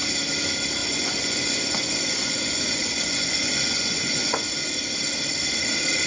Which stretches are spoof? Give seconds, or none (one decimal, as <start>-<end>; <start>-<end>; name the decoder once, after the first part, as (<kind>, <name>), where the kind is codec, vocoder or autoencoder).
0.8-4.5 (vocoder, Vocos)